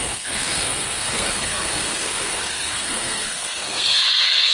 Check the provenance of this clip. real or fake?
fake